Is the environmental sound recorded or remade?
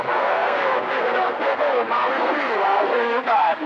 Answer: remade